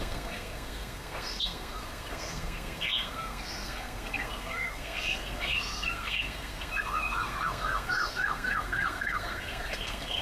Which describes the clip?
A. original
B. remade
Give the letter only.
B